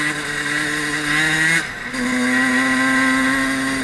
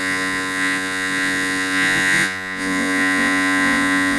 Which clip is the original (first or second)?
first